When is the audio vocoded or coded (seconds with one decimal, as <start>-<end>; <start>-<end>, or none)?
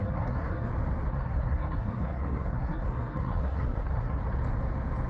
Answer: 0.0-0.7; 1.1-4.2